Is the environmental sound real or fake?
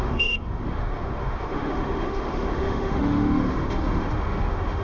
fake